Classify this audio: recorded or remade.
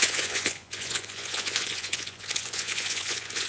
remade